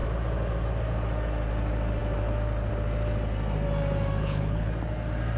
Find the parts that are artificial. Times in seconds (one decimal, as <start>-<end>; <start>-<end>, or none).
4.2-4.7